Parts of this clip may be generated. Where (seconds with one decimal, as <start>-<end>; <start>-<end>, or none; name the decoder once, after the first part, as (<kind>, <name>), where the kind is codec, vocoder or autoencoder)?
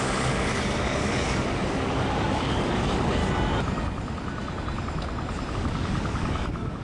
0.0-3.2 (codec, DAC); 5.5-6.8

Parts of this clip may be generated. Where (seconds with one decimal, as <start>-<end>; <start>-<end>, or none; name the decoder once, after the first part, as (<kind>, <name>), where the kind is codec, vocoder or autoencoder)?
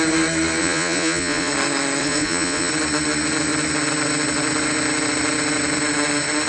0.6-1.5 (vocoder, Vocos); 2.0-2.7